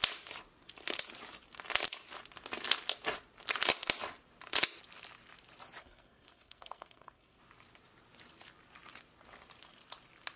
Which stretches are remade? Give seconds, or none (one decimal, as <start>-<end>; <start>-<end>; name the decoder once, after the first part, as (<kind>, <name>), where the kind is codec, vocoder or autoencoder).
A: 5.8-7.4 (codec, SNAC)